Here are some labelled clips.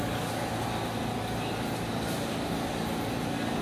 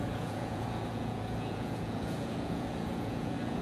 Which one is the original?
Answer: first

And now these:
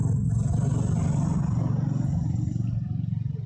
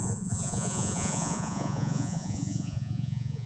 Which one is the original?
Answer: first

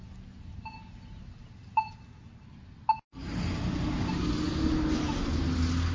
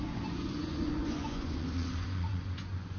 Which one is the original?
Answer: first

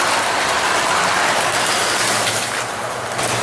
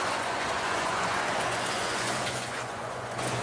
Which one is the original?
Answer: first